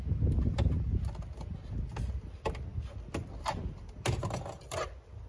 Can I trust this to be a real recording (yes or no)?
yes